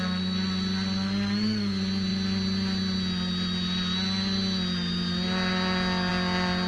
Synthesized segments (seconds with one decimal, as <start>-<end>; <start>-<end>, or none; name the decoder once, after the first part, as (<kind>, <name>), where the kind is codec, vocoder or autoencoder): none